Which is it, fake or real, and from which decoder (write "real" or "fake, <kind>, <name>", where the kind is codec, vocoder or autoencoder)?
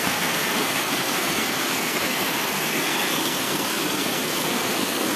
fake, codec, SNAC